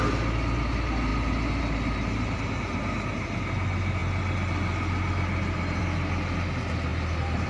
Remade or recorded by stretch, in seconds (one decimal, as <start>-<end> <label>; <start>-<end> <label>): 0.0-7.5 recorded